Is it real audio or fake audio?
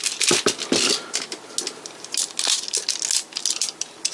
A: real